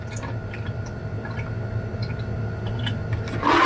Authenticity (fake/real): real